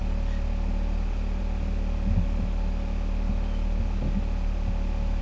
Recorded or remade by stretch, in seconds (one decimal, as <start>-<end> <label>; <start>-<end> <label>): 0.0-5.2 recorded